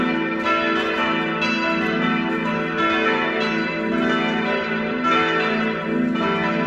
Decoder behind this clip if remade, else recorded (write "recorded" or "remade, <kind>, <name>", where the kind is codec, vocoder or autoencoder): recorded